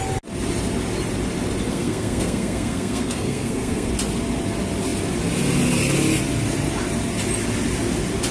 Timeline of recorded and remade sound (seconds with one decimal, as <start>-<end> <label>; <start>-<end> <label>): 0.0-1.7 recorded; 1.7-3.9 remade; 3.9-8.3 recorded